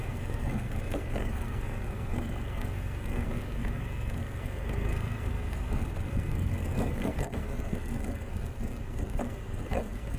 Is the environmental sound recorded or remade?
remade